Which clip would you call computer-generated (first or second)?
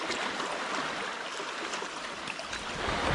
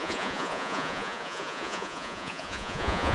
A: second